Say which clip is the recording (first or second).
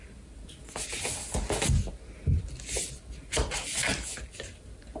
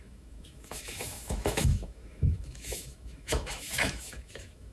first